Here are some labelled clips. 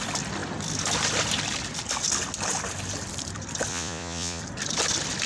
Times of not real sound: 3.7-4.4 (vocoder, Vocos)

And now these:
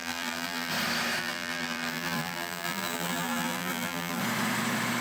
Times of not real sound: 0.0-0.7 (vocoder, BigVGAN v2); 1.2-4.2

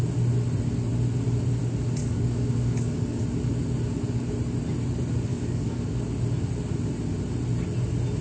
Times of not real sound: 2.0-3.2 (codec, DAC); 5.3-6.0

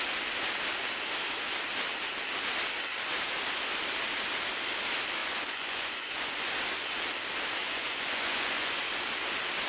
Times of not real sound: 5.2-6.5 (vocoder, Vocos); 7.6-8.8